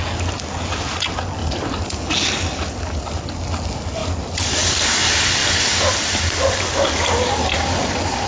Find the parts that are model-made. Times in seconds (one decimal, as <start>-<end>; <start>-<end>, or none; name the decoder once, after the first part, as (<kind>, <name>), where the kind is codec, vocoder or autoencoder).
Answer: 1.4-1.9 (vocoder, BigVGAN v2)